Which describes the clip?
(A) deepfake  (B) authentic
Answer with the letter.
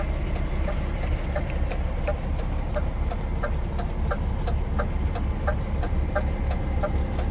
B